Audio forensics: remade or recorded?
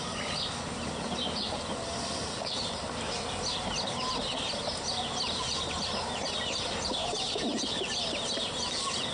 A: recorded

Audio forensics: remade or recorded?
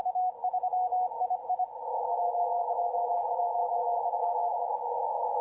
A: recorded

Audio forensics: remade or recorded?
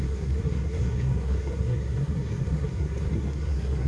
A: remade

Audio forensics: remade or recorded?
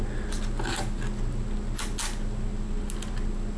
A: recorded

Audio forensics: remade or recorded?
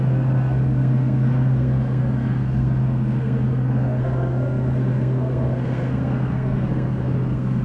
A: remade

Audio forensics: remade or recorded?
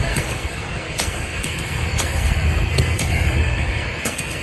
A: remade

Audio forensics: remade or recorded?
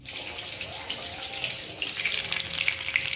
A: recorded